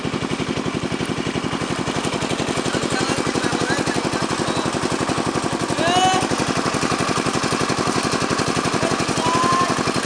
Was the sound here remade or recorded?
recorded